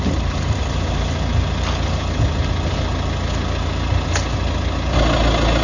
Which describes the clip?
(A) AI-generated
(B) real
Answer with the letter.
B